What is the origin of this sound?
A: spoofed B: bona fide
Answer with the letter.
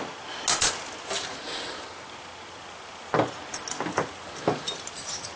B